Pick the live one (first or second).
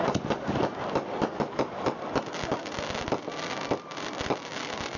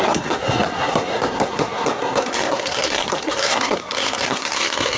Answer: first